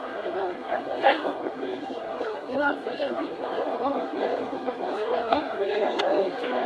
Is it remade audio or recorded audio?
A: remade